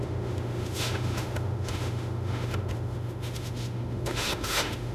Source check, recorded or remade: remade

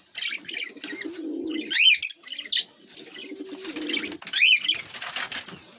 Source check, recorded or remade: recorded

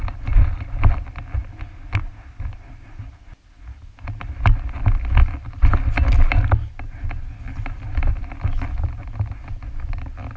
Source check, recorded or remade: recorded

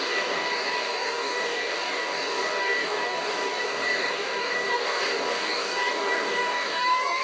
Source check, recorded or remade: remade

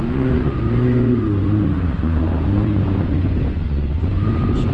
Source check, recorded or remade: remade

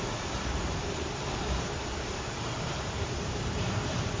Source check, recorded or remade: remade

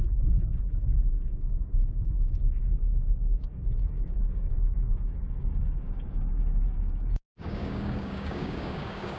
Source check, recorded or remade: remade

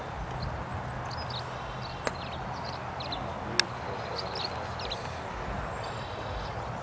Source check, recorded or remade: recorded